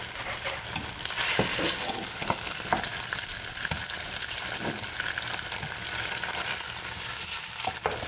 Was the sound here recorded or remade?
recorded